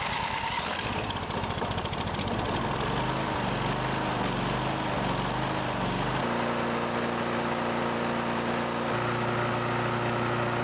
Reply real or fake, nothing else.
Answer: real